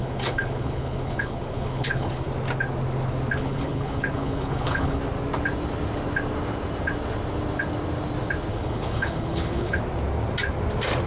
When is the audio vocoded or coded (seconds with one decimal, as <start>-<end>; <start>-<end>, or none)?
0.0-2.3; 3.4-5.0; 8.5-9.8